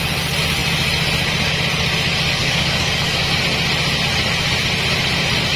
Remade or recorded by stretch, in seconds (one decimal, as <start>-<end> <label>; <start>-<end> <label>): 0.0-2.4 recorded; 2.4-3.3 remade; 3.3-5.6 recorded